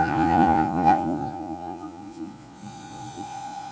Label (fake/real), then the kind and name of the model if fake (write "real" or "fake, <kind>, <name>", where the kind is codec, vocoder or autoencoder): fake, vocoder, Vocos